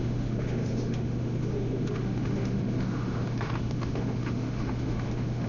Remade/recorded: remade